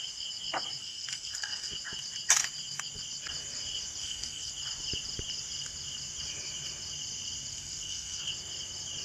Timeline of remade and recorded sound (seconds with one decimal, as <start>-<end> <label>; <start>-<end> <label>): 0.0-0.8 recorded; 0.8-1.7 remade; 1.7-4.0 recorded; 4.0-4.5 remade; 4.5-7.5 recorded; 7.5-8.2 remade; 8.2-9.0 recorded